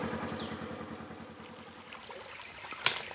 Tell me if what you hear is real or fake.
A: real